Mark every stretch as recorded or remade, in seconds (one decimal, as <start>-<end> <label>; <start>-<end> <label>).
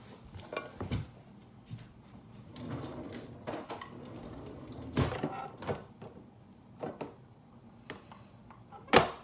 0.0-9.2 recorded